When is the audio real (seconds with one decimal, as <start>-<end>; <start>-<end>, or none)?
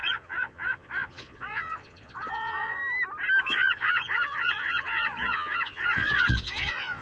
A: 2.8-3.4